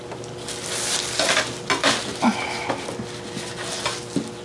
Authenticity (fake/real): real